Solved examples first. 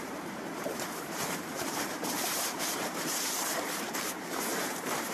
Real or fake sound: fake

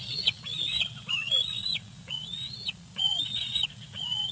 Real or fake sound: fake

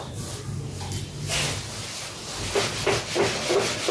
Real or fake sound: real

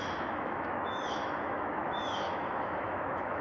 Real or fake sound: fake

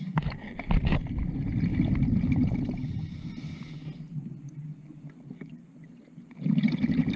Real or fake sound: real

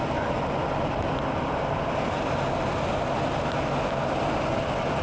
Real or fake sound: real